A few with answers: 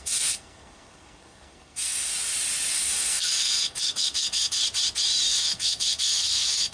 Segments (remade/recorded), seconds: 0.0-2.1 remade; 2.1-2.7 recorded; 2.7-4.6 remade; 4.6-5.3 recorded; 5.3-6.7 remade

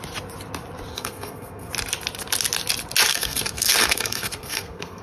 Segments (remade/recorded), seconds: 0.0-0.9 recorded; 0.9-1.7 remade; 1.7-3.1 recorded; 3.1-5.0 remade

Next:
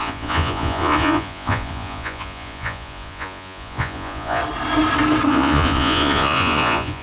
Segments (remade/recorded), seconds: 0.0-4.4 remade; 4.4-5.3 recorded; 5.3-7.0 remade

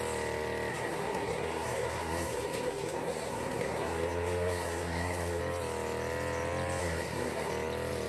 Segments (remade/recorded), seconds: 0.0-0.7 recorded; 0.7-5.4 remade; 5.4-6.8 recorded; 6.8-7.5 remade; 7.5-8.1 recorded

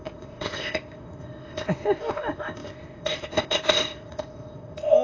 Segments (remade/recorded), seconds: 0.0-5.0 remade

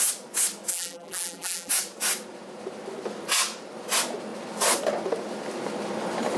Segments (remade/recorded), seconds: 0.0-0.7 recorded; 0.7-1.7 remade; 1.7-6.4 recorded

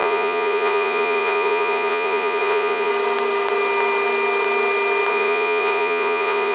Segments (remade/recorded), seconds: 0.0-2.9 remade; 2.9-5.1 recorded; 5.1-6.5 remade

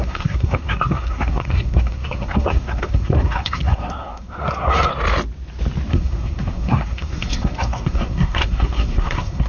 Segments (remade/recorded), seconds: 0.0-4.9 remade; 4.9-5.9 recorded; 5.9-9.5 remade